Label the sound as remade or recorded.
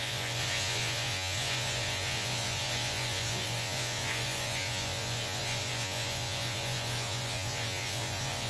remade